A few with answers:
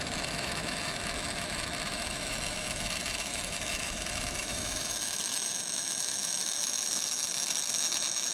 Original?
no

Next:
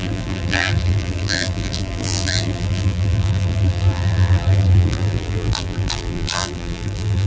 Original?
no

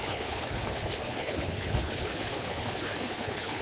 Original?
no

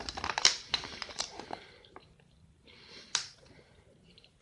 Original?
no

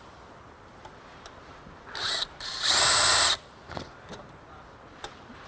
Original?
no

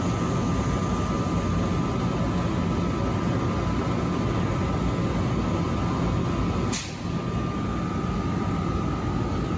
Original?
yes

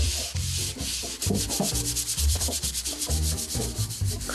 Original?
no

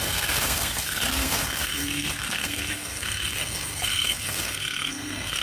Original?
no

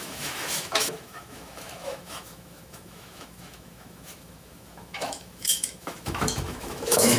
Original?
no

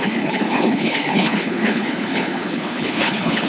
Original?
no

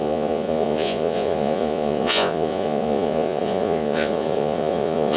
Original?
no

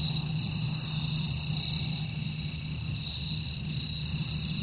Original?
yes